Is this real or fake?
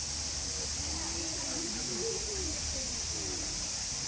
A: real